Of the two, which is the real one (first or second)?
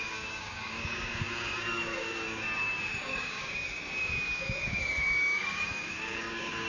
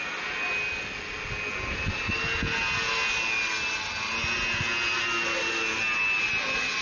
second